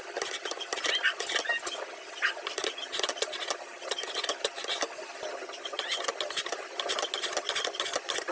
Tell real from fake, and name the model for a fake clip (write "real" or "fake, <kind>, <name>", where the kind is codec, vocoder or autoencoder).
real